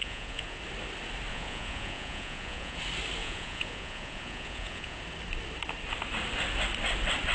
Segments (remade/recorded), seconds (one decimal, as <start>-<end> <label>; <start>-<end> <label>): 0.0-0.6 remade; 0.6-1.3 recorded; 1.3-2.8 remade; 2.8-3.2 recorded; 3.2-5.0 remade; 5.0-7.3 recorded